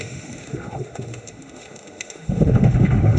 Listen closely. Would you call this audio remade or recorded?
remade